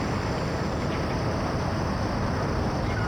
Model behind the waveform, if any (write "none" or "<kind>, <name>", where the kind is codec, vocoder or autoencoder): none